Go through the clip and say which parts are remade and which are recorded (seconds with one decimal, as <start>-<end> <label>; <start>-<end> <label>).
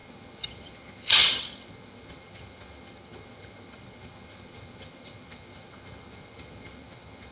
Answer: 0.0-7.3 remade